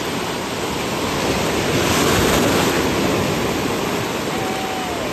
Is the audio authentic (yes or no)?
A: yes